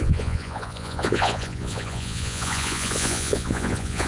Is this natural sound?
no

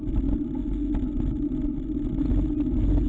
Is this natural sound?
yes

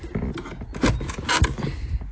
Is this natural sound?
yes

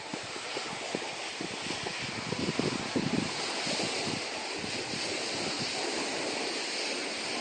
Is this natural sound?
yes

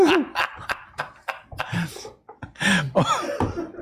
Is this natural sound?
yes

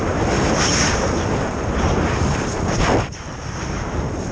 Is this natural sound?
yes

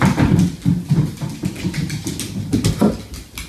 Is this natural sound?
yes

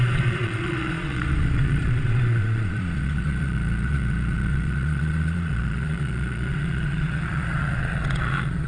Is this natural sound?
no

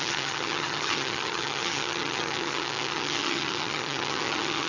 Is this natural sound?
no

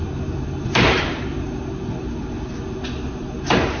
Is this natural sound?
yes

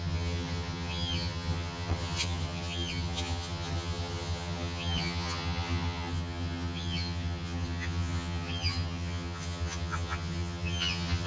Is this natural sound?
no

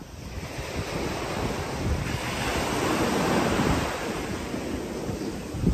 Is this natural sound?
yes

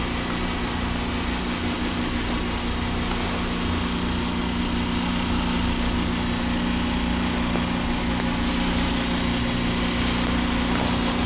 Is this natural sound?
yes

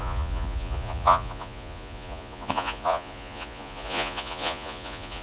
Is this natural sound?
no